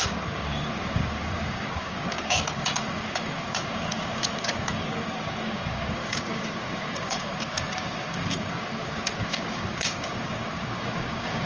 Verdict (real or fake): fake